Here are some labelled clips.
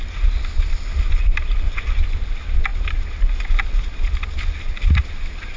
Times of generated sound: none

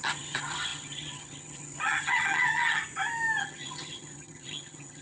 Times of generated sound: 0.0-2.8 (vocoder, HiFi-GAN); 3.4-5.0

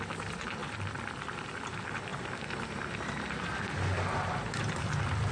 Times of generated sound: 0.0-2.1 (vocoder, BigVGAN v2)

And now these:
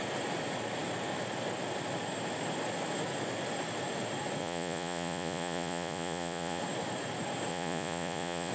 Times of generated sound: 4.4-6.6 (vocoder, Vocos); 7.5-8.5

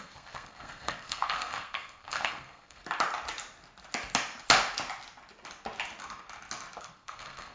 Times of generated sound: 0.0-2.8 (codec, SNAC); 6.8-7.5

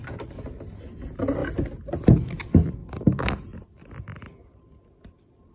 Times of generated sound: none

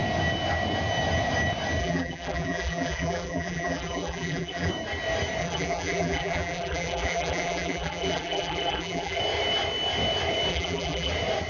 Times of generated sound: 1.8-4.7 (vocoder, BigVGAN v2); 5.4-9.2; 10.5-11.1